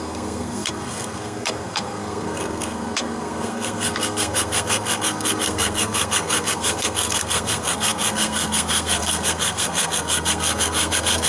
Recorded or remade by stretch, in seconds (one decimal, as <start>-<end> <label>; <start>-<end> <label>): 0.0-11.3 remade